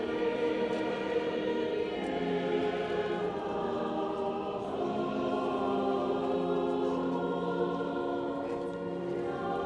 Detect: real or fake real